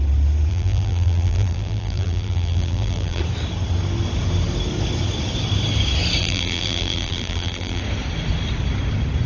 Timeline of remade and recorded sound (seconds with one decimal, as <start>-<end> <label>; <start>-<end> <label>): 0.0-0.5 recorded; 0.5-3.2 remade; 3.2-6.2 recorded; 6.2-7.8 remade; 7.8-9.3 recorded